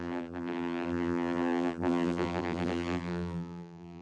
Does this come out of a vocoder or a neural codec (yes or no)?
yes